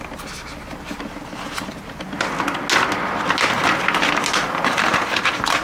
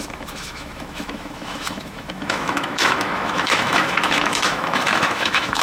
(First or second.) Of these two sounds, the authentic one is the first